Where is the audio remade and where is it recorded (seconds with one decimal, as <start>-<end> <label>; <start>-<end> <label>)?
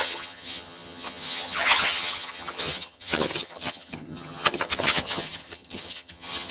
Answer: 0.0-6.5 remade